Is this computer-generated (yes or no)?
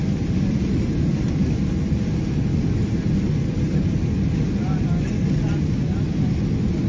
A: no